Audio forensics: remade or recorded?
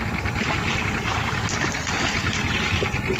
recorded